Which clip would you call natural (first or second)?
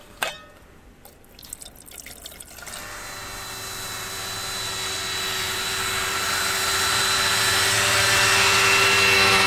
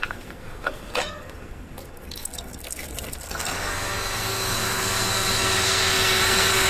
first